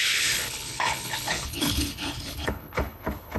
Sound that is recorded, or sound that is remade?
remade